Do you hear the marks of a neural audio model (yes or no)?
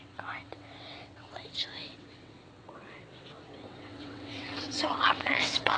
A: yes